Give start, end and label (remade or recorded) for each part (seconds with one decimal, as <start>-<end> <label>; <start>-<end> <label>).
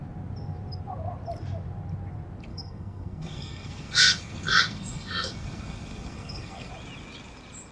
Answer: 0.0-2.5 recorded; 2.5-6.7 remade; 6.7-7.7 recorded